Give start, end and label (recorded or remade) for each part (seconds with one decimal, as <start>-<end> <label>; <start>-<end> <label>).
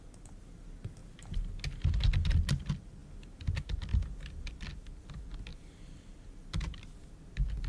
0.0-3.9 recorded; 3.9-4.5 remade; 4.5-5.5 recorded; 5.5-7.2 remade; 7.2-7.7 recorded